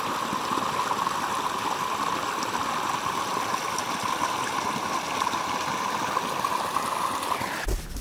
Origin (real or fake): real